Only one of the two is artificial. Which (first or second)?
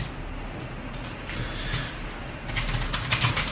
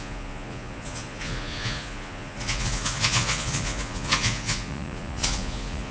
second